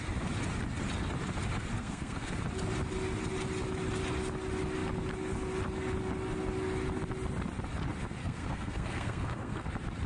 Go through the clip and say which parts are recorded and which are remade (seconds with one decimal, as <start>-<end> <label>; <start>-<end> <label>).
0.0-1.7 recorded; 1.7-2.3 remade; 2.3-8.2 recorded; 8.2-9.7 remade; 9.7-10.1 recorded